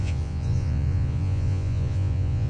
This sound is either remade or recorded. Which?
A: remade